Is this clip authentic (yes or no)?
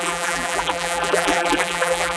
no